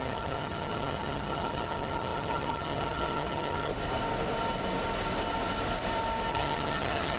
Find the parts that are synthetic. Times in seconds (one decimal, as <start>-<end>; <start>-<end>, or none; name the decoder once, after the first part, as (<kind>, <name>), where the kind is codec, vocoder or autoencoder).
0.0-3.7 (vocoder, HiFi-GAN); 6.3-7.2